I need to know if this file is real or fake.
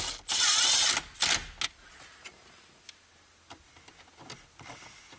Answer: real